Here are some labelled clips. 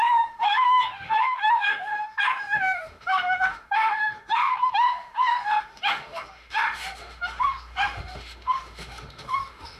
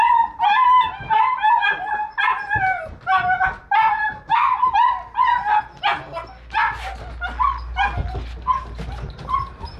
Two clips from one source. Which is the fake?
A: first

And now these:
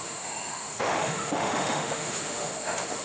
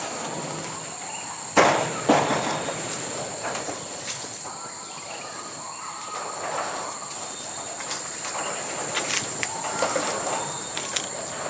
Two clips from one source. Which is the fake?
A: first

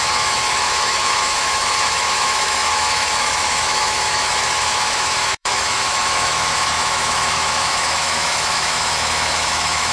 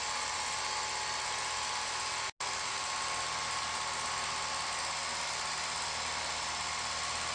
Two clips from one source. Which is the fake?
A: first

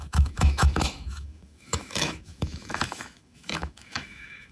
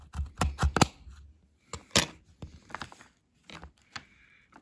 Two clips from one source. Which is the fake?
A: first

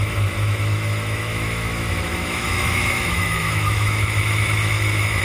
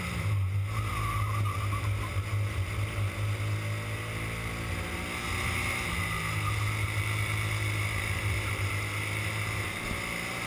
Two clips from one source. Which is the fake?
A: first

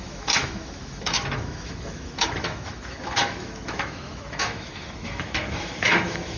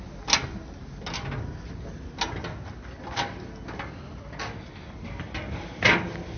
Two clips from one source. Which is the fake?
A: first